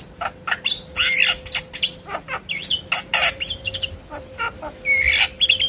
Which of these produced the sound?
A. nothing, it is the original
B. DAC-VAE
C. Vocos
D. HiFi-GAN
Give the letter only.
A